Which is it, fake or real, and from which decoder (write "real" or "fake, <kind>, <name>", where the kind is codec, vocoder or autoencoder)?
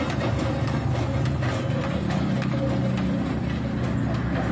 real